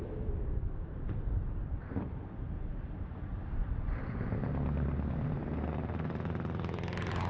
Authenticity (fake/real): fake